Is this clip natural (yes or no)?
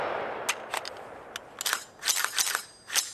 yes